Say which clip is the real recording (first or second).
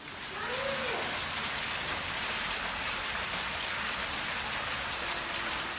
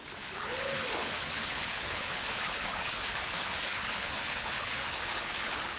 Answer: first